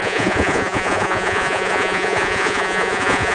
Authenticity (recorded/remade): remade